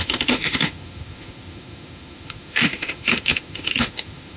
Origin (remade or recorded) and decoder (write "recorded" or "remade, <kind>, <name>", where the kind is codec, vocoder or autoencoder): remade, autoencoder, DAC-VAE